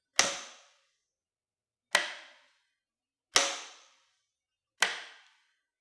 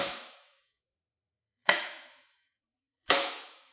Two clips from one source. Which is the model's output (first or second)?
second